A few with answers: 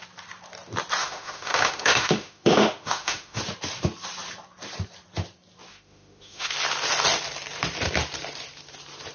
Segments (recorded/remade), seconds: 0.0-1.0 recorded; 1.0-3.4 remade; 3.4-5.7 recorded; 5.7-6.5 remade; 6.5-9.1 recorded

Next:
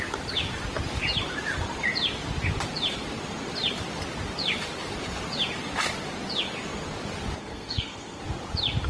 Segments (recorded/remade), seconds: 0.0-7.4 recorded; 7.4-8.2 remade; 8.2-8.9 recorded